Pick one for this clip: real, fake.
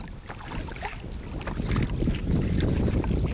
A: real